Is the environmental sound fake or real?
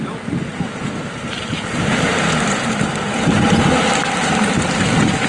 fake